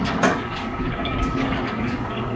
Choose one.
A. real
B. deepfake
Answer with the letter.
B